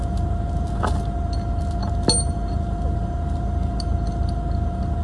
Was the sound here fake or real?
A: real